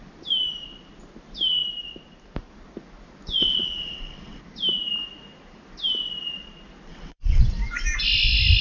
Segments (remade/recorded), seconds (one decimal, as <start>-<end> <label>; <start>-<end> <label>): 0.0-3.4 recorded; 3.4-4.4 remade; 4.4-6.9 recorded; 6.9-7.4 remade; 7.4-8.6 recorded